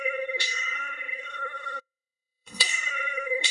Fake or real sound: fake